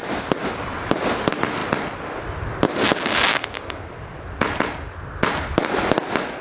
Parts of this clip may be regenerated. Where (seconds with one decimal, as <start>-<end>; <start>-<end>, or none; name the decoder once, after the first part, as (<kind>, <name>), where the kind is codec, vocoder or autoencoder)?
3.3-3.9 (codec, DAC)